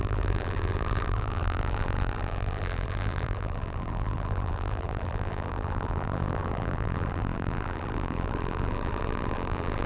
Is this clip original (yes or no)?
no